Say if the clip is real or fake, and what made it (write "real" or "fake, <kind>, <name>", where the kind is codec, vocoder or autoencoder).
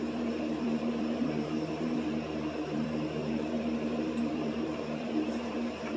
fake, vocoder, BigVGAN v2